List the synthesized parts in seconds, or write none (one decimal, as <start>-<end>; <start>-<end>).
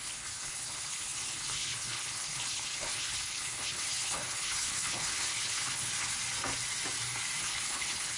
0.0-6.1; 7.4-8.2